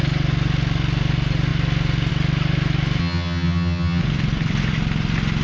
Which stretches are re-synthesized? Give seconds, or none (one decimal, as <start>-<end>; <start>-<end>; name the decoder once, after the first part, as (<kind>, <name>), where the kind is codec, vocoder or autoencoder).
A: 3.0-4.0 (vocoder, HiFi-GAN)